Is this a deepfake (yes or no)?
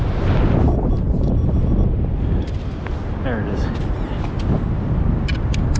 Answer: no